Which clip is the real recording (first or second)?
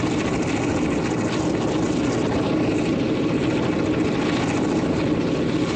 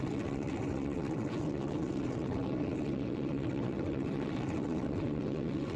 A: first